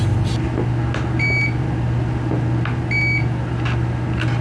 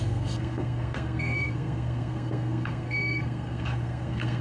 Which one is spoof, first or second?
second